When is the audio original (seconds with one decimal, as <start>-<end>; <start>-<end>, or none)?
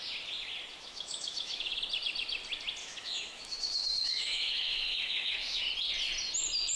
0.0-0.7; 1.8-2.8; 5.6-6.8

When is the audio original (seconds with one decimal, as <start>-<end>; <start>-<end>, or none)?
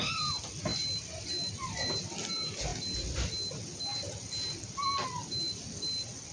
0.0-6.3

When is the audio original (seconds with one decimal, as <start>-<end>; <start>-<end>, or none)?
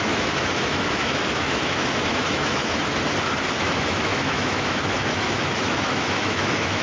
2.6-3.5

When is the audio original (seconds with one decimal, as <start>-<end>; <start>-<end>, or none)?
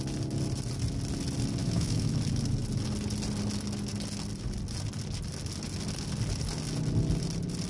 0.0-1.6; 2.2-7.7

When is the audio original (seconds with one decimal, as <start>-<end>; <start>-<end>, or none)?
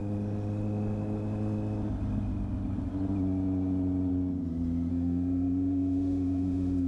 0.0-4.9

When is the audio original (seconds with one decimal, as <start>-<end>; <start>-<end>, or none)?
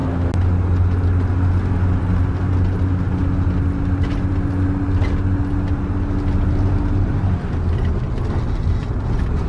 0.0-9.5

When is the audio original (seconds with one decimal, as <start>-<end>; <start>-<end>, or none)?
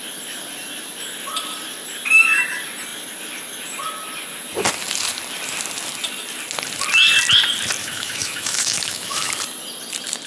0.0-7.8; 9.3-10.3